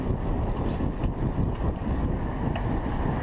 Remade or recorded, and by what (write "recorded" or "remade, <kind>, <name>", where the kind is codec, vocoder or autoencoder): recorded